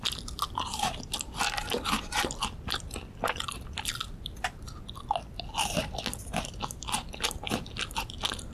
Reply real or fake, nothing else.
real